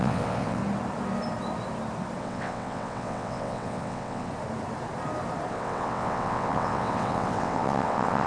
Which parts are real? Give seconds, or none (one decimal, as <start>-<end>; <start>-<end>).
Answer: 0.6-2.2; 4.3-5.5